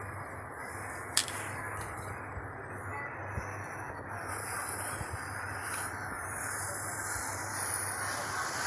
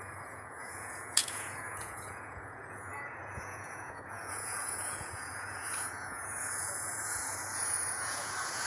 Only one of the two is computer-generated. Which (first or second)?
second